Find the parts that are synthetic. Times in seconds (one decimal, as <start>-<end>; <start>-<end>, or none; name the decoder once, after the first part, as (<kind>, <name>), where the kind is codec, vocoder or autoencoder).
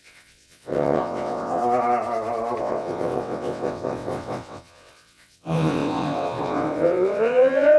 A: 0.0-1.6 (vocoder, WaveNeXt); 2.6-7.8